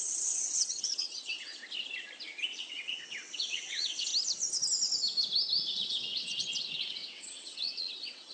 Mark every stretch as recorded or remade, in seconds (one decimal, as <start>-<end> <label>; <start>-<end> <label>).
0.0-1.6 remade; 1.6-2.6 recorded; 2.6-4.1 remade; 4.1-5.7 recorded; 5.7-8.3 remade